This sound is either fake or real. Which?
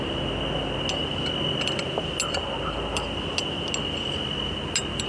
real